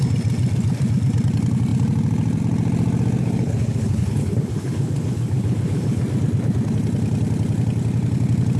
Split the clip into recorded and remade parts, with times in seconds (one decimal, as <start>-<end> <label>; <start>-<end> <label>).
0.0-3.2 recorded; 3.2-6.0 remade; 6.0-8.6 recorded